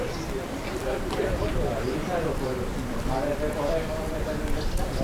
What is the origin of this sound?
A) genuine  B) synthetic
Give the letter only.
B